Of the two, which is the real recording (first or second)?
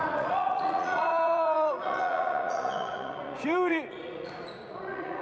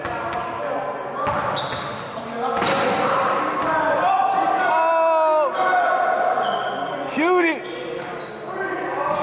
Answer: second